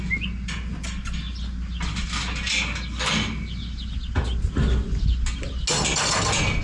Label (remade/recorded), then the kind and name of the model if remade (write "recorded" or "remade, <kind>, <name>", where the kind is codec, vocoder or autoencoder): recorded